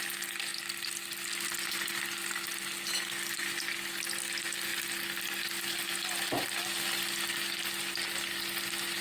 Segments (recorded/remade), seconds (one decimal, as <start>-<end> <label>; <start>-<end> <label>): 0.0-9.0 recorded